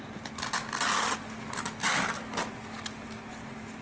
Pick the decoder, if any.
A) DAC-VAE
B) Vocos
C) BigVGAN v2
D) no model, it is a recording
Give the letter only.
D